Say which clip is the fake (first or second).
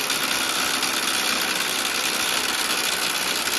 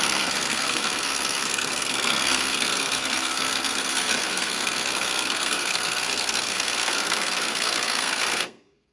second